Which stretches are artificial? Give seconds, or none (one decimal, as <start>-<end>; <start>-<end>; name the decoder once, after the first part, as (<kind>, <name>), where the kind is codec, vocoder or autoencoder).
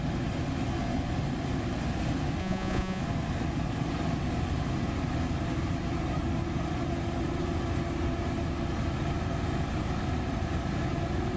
2.4-3.0 (vocoder, Vocos)